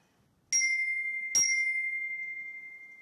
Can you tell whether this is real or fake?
real